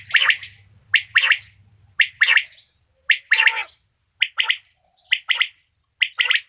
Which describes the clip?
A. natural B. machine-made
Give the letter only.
A